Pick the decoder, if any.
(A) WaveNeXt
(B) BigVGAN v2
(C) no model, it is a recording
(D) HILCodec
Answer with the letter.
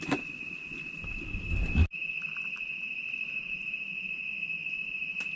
C